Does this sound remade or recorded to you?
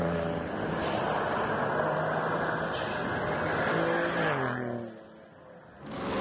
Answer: recorded